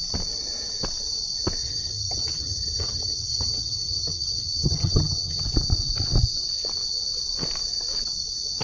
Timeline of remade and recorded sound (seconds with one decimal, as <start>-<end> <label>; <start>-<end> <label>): 0.0-1.6 recorded; 1.6-5.4 remade; 5.4-8.6 recorded